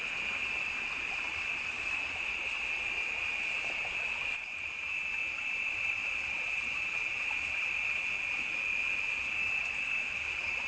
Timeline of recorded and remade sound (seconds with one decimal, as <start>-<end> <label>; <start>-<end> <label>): 0.0-6.0 recorded; 6.0-7.3 remade; 7.3-10.7 recorded